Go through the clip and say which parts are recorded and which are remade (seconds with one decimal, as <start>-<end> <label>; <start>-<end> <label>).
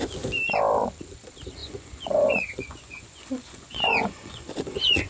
0.0-1.6 recorded; 1.6-5.1 remade